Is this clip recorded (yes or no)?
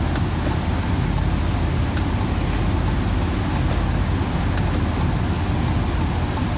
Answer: yes